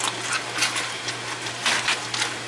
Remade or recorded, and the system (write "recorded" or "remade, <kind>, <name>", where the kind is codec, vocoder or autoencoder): recorded